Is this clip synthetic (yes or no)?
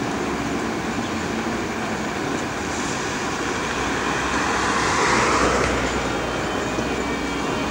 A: no